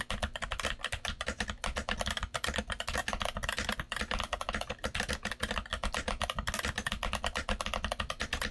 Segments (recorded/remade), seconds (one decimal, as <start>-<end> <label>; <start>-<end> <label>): 0.0-8.5 recorded